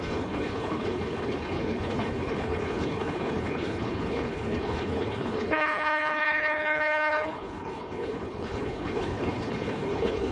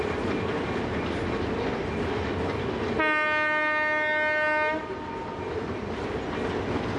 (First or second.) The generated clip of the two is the first